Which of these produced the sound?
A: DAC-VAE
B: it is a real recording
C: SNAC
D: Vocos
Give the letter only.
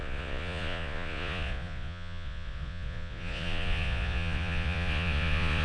D